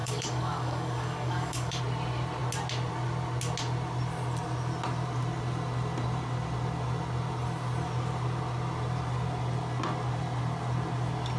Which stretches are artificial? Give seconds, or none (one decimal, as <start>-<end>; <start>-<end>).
0.0-1.8